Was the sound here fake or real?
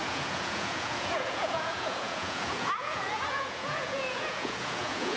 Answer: fake